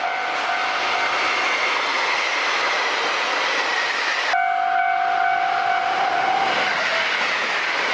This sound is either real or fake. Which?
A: real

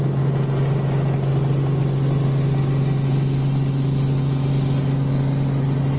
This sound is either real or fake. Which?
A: real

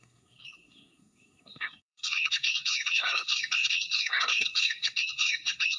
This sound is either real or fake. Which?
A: fake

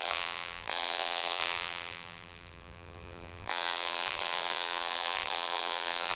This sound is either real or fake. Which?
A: fake